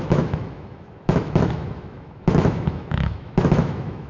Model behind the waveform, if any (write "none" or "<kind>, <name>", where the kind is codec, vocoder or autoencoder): autoencoder, DAC-VAE